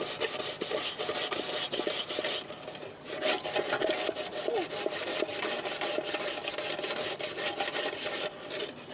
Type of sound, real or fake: real